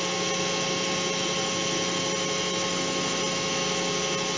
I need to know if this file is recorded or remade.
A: recorded